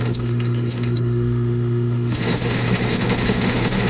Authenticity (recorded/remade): remade